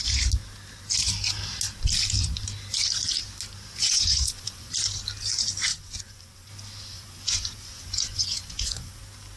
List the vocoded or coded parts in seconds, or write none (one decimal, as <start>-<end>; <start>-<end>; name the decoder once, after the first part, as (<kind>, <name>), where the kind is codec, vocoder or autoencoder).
3.8-4.7 (vocoder, Vocos); 5.7-6.5; 6.9-9.0